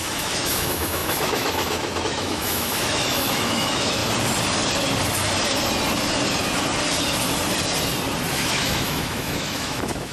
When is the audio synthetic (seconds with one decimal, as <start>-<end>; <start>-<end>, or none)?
0.0-4.0; 8.3-10.1